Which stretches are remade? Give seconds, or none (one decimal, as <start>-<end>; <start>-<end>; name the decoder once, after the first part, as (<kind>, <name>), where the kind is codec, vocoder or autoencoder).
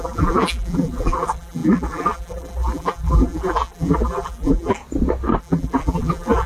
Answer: 0.0-4.8 (vocoder, BigVGAN v2); 5.4-6.5